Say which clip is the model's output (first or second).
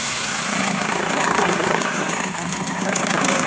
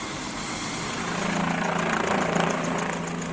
first